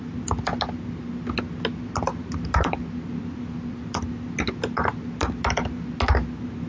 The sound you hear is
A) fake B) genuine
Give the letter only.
B